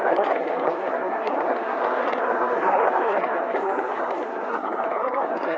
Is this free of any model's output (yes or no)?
no